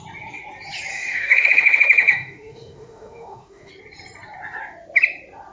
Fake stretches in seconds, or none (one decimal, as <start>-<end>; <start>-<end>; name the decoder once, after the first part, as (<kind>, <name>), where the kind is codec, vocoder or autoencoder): 0.9-3.7 (autoencoder, DAC-VAE)